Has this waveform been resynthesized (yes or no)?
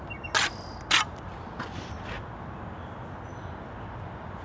no